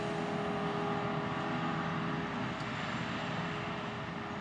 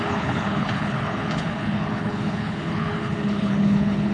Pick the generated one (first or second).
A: second